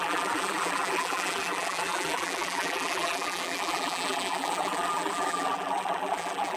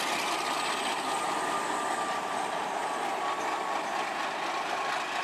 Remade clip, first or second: first